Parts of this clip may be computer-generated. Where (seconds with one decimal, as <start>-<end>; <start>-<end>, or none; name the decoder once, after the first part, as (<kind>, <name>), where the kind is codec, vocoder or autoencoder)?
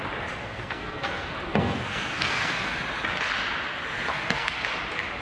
0.4-2.8 (codec, SNAC); 4.1-4.7